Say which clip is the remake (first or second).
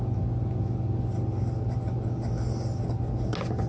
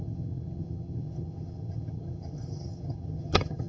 second